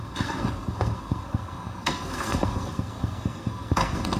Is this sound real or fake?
fake